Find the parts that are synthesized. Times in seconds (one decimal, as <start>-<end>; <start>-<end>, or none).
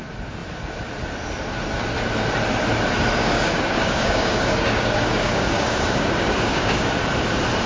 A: 3.2-6.9